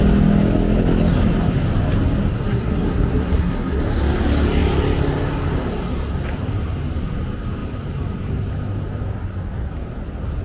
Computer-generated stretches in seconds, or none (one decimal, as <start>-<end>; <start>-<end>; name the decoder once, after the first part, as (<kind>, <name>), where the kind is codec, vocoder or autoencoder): 2.3-3.8 (codec, SNAC)